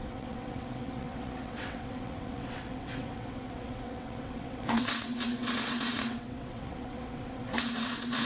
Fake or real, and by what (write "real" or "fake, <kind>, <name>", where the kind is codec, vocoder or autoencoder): fake, vocoder, WaveNeXt